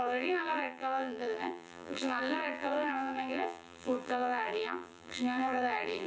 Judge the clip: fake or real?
fake